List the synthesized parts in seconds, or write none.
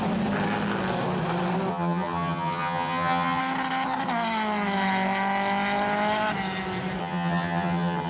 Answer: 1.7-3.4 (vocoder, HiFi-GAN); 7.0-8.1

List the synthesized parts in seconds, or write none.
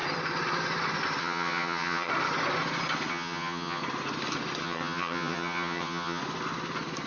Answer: 1.2-2.1 (vocoder, HiFi-GAN); 3.1-3.8; 4.6-6.2